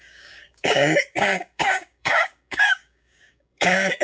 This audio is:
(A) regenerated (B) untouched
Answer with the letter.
A